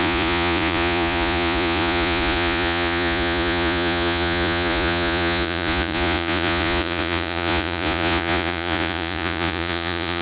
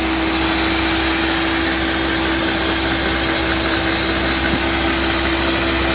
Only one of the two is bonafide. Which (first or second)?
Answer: second